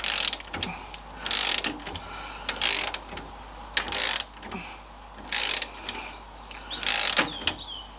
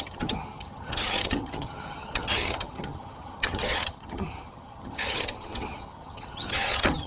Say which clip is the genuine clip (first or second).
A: first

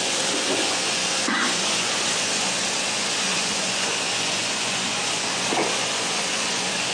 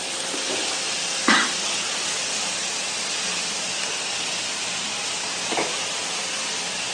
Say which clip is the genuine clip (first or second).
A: second